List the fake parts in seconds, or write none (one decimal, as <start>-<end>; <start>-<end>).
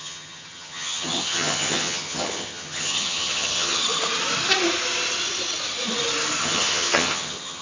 0.0-3.8; 6.4-7.6